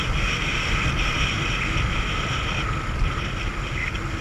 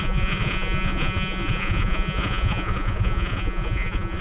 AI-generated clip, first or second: second